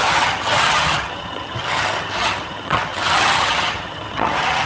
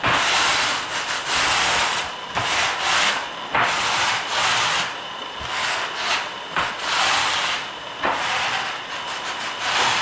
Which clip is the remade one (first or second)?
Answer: first